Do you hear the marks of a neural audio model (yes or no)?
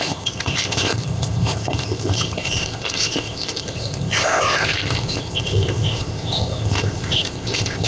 yes